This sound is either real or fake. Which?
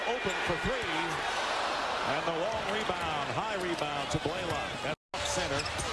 real